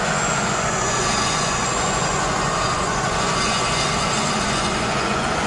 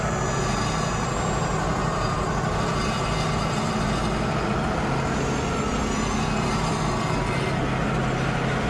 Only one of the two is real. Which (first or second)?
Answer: second